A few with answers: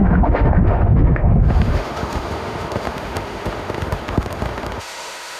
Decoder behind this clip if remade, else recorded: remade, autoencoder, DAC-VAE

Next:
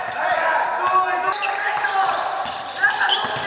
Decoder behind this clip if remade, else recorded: recorded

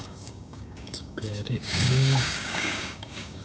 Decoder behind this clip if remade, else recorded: remade, codec, DAC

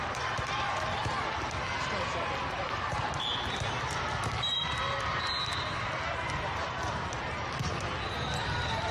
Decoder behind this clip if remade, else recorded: recorded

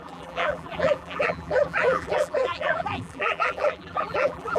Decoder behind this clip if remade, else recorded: remade, vocoder, BigVGAN v2